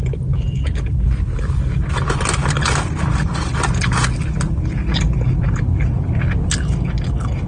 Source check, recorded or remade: recorded